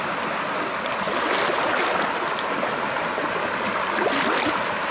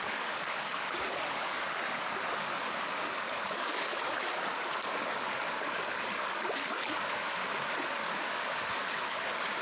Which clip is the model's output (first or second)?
second